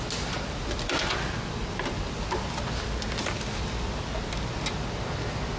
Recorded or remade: recorded